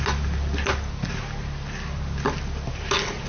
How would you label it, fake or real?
real